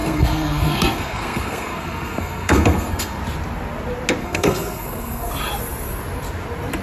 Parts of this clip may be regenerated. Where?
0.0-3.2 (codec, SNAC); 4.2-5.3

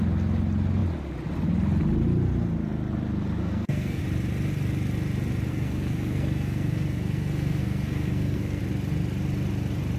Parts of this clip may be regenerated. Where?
3.4-4.0 (codec, SNAC); 5.5-8.6